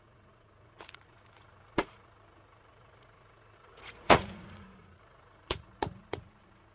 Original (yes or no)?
no